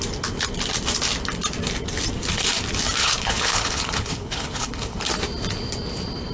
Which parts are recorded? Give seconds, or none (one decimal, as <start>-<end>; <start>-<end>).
0.0-3.0; 5.1-6.3